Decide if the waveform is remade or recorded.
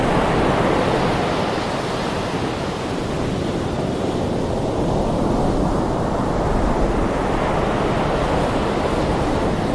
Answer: recorded